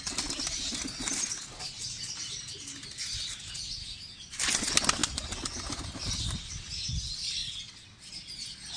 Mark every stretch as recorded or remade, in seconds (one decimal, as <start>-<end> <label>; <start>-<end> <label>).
0.0-7.4 recorded; 7.4-8.1 remade; 8.1-8.8 recorded